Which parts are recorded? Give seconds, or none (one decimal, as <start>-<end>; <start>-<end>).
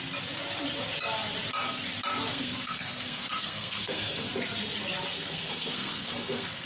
0.0-2.3; 4.4-5.1